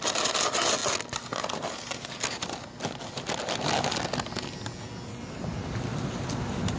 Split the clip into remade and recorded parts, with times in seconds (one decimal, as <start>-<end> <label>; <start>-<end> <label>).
0.0-6.8 recorded

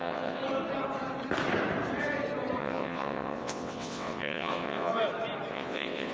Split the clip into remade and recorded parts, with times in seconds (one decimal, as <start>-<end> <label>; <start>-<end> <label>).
0.0-0.4 remade; 0.4-2.6 recorded; 2.6-4.9 remade; 4.9-5.5 recorded; 5.5-6.1 remade

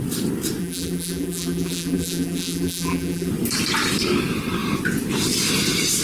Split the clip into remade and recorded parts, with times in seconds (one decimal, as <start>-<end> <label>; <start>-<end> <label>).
0.0-0.6 recorded; 0.6-3.3 remade; 3.3-6.0 recorded

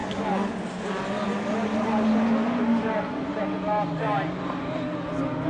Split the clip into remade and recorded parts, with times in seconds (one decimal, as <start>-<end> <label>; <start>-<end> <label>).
0.0-5.5 recorded